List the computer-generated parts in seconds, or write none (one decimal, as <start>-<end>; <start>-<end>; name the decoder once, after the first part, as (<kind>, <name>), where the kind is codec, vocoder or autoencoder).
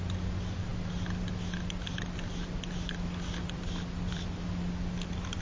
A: none